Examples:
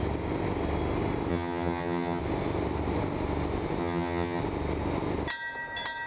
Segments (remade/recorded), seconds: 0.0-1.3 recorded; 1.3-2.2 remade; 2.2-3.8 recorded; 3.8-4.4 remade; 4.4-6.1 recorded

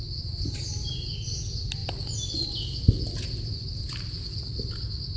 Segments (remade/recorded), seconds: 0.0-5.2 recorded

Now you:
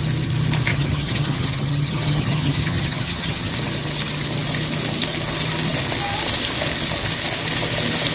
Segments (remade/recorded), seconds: 0.0-0.7 recorded; 0.7-3.5 remade; 3.5-8.1 recorded

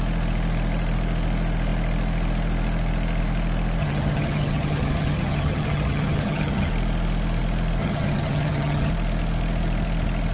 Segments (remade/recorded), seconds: 0.0-3.8 recorded; 3.8-6.7 remade; 6.7-7.8 recorded; 7.8-8.9 remade; 8.9-10.3 recorded

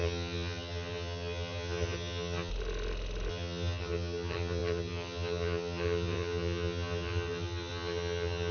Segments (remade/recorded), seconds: 0.0-2.5 remade; 2.5-3.3 recorded; 3.3-8.5 remade

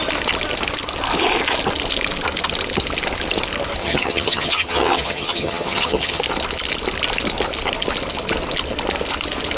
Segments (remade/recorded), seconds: 0.0-3.8 recorded; 3.8-6.2 remade; 6.2-9.6 recorded

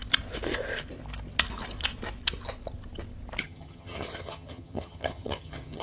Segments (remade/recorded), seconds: 0.0-3.4 recorded; 3.4-5.8 remade